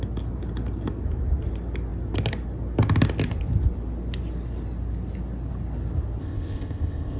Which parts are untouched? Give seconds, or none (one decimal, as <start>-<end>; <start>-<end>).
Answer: 0.0-6.2